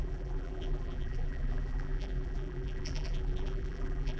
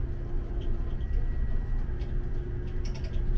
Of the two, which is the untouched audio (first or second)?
second